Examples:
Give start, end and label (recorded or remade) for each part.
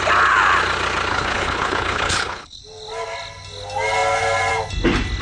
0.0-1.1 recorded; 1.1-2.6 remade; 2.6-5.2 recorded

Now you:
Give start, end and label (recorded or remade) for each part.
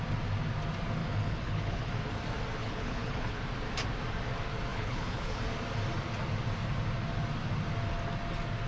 0.0-1.0 recorded; 1.0-1.9 remade; 1.9-2.6 recorded; 2.6-3.4 remade; 3.4-4.7 recorded; 4.7-5.4 remade; 5.4-8.7 recorded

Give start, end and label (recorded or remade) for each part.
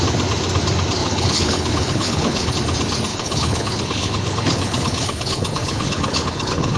0.0-1.0 recorded; 1.0-2.5 remade; 2.5-3.1 recorded; 3.1-6.8 remade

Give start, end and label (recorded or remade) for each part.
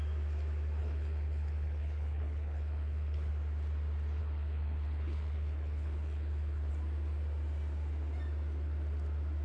0.0-0.8 recorded; 0.8-3.3 remade; 3.3-4.2 recorded; 4.2-6.7 remade; 6.7-9.4 recorded